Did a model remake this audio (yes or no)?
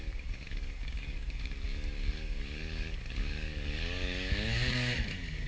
yes